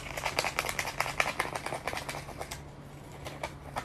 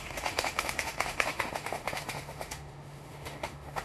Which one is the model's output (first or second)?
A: second